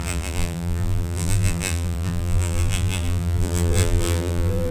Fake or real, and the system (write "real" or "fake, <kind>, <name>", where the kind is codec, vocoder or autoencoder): fake, vocoder, BigVGAN v2